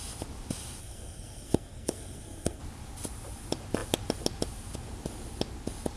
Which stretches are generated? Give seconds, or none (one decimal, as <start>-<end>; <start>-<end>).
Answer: 0.8-2.6